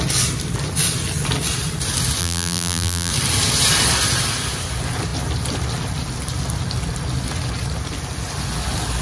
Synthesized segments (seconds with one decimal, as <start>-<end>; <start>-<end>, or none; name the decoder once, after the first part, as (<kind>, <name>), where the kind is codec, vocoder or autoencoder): 2.2-3.1 (vocoder, BigVGAN v2)